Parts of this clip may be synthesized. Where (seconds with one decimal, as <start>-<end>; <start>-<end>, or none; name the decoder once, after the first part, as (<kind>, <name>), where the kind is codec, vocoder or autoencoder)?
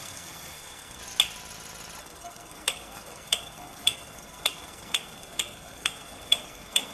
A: 0.0-1.0 (codec, SNAC); 2.0-6.9